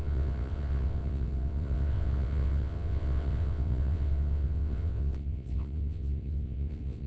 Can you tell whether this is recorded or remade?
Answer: remade